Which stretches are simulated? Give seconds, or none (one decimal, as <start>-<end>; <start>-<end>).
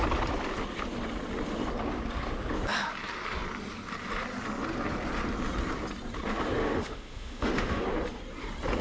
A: 6.6-7.8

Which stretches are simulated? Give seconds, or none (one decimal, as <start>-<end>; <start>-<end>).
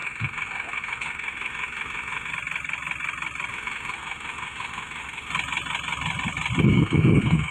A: 0.0-2.3; 3.5-5.3; 6.6-7.5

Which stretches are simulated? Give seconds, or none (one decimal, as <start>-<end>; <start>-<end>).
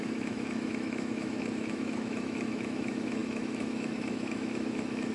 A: 0.0-5.1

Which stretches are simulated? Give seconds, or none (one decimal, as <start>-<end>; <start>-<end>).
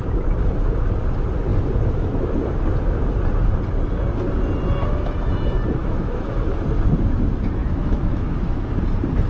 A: 5.8-6.6; 7.6-8.7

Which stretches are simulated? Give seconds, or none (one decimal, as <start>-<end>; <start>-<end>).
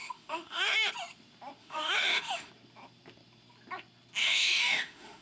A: 0.0-0.9; 1.6-2.5; 4.2-5.2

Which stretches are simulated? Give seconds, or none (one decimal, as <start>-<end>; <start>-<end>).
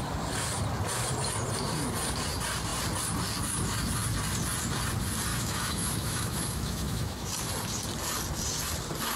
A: 5.3-7.3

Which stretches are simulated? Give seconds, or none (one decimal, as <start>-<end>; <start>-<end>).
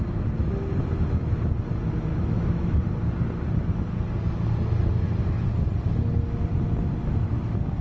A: 2.1-2.8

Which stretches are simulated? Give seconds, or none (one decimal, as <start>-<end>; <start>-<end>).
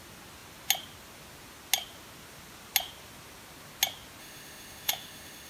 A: 4.2-5.5